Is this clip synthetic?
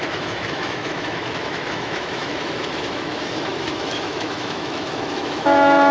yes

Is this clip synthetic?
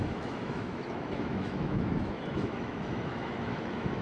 yes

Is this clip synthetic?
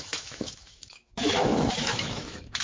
yes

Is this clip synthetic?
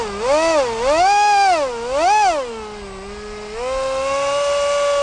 no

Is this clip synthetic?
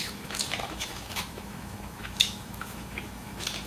yes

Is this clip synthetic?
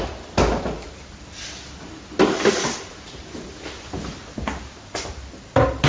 no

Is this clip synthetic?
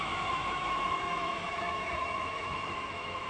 yes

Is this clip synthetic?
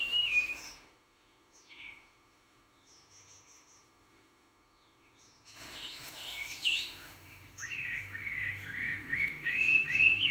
yes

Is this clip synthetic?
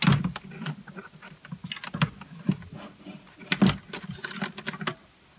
no